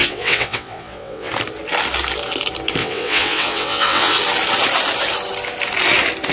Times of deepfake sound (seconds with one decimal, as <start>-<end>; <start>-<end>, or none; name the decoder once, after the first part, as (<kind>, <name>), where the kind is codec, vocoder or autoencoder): 0.0-1.3 (vocoder, WaveNeXt); 2.8-4.2